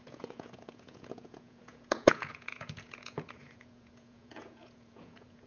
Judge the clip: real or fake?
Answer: fake